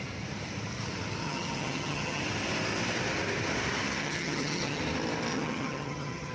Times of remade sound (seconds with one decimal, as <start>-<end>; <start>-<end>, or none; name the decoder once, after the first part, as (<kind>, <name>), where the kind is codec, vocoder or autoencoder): 1.2-2.2 (vocoder, HiFi-GAN); 4.0-4.8; 5.3-6.3